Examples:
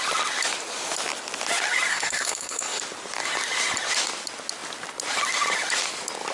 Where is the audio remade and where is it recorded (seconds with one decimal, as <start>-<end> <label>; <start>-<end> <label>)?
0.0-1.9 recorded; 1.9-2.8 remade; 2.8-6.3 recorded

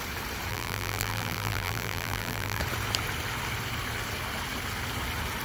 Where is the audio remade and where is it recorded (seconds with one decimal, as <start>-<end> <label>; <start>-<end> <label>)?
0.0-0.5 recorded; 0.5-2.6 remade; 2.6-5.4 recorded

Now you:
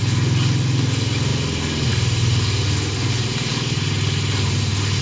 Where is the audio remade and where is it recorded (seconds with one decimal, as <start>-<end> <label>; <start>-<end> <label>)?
0.0-5.0 recorded

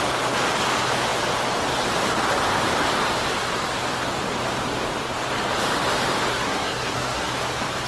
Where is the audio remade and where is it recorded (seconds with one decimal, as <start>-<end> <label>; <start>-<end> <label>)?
0.0-6.3 recorded; 6.3-7.3 remade; 7.3-7.9 recorded